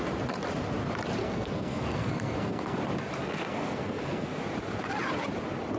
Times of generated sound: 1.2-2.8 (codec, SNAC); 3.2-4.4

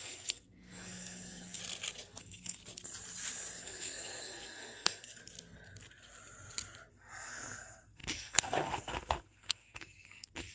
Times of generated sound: 0.0-1.6 (codec, SNAC); 2.2-2.6; 3.6-5.2; 6.9-10.5

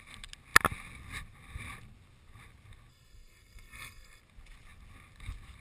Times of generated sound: 2.9-4.2 (codec, SNAC)

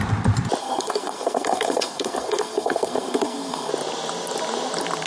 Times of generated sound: 0.6-3.7 (codec, SNAC)